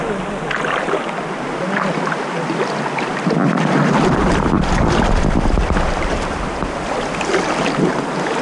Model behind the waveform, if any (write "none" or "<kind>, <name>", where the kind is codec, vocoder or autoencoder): none